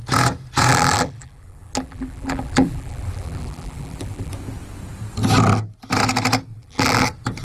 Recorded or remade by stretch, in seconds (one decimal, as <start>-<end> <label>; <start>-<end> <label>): 0.0-0.7 recorded; 0.7-4.3 remade; 4.3-6.5 recorded; 6.5-7.0 remade; 7.0-7.4 recorded